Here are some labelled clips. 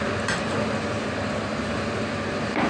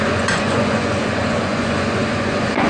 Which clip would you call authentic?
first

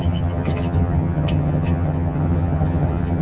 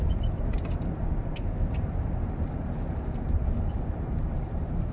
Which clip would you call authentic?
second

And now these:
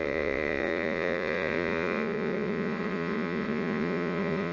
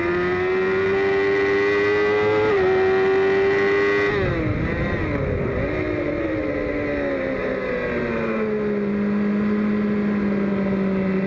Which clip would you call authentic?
second